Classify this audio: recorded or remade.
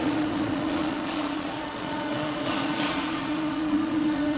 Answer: remade